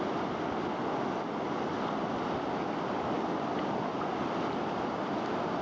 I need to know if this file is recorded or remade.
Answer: recorded